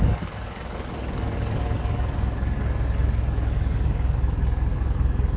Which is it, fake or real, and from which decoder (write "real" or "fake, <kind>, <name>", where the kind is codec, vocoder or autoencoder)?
fake, codec, DAC